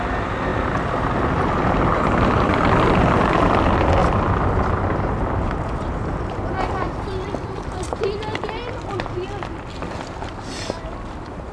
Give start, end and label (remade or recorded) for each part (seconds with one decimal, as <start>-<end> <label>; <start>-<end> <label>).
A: 0.0-0.5 recorded; 0.5-3.6 remade; 3.6-4.0 recorded; 4.0-7.8 remade; 7.8-11.5 recorded